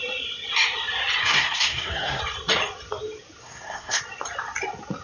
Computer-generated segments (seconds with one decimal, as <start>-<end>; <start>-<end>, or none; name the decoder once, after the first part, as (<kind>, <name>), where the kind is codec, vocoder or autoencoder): 1.2-2.2 (codec, SNAC); 3.4-4.0

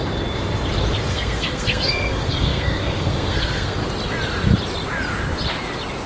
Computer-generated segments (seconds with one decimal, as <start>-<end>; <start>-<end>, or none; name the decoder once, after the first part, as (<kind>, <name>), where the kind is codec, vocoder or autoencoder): 1.1-3.8 (codec, SNAC)

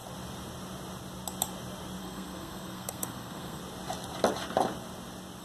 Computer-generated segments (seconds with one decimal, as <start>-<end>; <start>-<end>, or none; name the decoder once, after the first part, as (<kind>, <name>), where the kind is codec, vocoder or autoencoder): 2.0-3.6 (codec, SNAC)

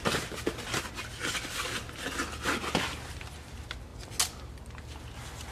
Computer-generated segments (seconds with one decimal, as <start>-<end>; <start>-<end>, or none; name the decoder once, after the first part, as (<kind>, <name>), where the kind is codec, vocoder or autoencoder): none

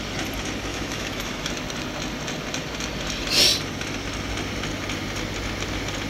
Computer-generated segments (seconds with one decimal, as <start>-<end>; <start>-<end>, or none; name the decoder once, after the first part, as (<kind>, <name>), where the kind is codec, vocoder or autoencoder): 0.7-1.5 (autoencoder, DAC-VAE)

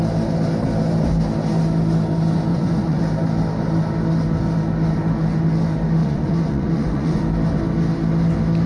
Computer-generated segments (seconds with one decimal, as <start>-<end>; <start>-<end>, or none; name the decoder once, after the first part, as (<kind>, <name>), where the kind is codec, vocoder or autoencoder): 2.5-3.0 (vocoder, Vocos); 6.0-7.2

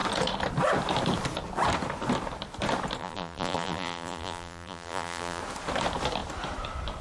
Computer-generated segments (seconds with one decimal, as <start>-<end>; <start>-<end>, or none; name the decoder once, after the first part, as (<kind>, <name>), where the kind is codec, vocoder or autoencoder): 3.0-5.4 (vocoder, BigVGAN v2)